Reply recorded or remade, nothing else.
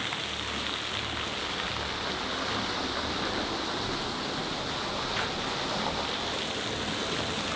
recorded